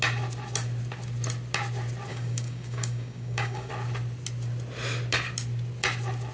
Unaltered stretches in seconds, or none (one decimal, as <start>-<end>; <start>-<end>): 0.0-2.1; 3.7-6.3